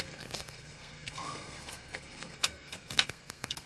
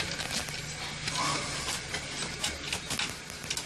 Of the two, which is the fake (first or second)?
first